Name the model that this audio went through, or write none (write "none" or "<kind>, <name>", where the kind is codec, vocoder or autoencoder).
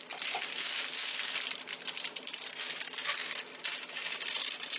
none